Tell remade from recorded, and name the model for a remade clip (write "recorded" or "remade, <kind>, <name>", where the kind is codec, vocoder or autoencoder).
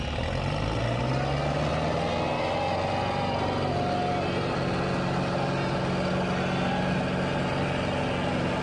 recorded